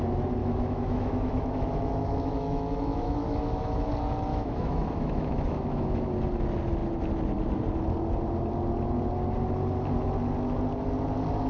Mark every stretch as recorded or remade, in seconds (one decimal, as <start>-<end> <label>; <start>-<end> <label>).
0.0-0.4 recorded; 0.4-3.9 remade; 3.9-4.3 recorded; 4.3-6.1 remade; 6.1-11.5 recorded